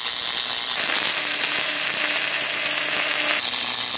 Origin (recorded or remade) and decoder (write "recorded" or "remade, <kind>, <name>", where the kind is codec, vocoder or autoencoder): recorded